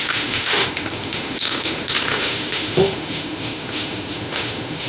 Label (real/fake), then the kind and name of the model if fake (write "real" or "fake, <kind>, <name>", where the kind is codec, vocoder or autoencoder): fake, autoencoder, DAC-VAE